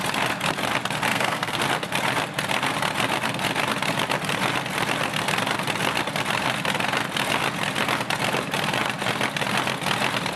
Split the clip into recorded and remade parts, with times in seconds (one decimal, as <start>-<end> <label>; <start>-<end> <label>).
0.0-1.1 recorded; 1.1-1.6 remade; 1.6-10.4 recorded